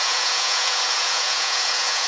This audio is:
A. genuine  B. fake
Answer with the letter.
B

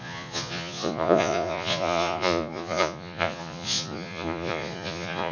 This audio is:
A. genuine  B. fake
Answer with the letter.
B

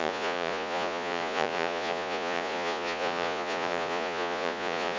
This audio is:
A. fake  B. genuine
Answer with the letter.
A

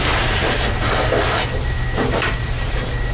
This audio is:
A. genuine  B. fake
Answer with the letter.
A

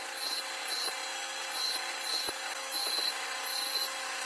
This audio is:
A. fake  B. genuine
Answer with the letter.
B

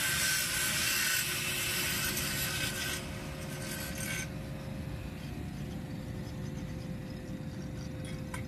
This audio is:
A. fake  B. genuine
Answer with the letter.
B